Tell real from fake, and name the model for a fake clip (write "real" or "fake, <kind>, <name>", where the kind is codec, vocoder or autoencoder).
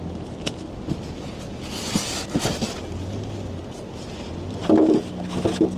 real